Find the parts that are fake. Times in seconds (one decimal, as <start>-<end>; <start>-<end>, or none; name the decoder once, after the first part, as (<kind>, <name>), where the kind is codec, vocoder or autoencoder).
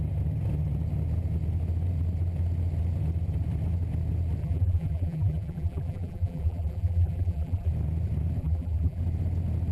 4.4-7.7 (vocoder, BigVGAN v2); 8.4-9.0